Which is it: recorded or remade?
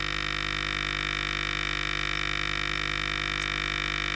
recorded